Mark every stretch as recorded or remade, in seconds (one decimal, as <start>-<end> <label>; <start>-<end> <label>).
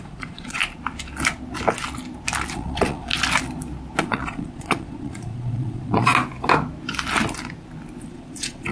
0.0-0.6 remade; 0.6-2.5 recorded; 2.5-3.1 remade; 3.1-4.0 recorded; 4.0-6.1 remade; 6.1-8.1 recorded; 8.1-8.7 remade